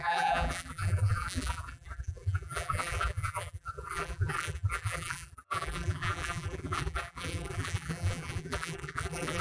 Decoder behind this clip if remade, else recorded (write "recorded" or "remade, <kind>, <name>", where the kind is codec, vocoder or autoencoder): remade, vocoder, BigVGAN v2